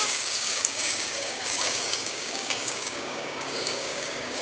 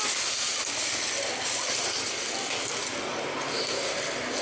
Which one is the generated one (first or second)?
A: first